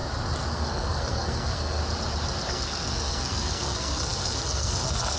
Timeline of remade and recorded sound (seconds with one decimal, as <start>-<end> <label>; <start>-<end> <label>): 0.0-0.5 recorded; 0.5-1.8 remade; 1.8-2.5 recorded; 2.5-5.2 remade